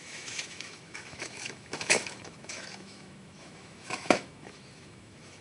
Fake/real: fake